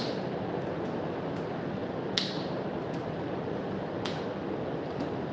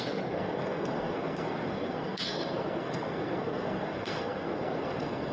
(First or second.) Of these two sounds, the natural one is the first